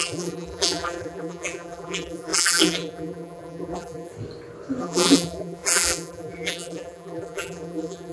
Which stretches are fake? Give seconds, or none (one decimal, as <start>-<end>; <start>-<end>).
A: 0.0-4.1; 4.8-8.1